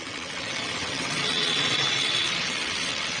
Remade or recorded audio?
remade